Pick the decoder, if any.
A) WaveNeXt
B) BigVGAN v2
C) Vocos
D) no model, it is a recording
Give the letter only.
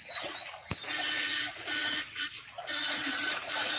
C